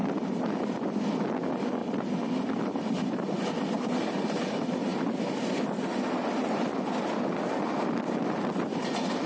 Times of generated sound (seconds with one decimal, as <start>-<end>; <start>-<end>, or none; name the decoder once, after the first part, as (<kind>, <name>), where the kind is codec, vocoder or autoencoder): none